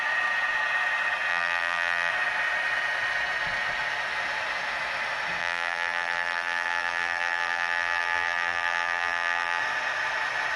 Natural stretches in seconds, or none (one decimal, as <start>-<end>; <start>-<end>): 0.0-1.3; 2.1-5.4; 9.6-10.6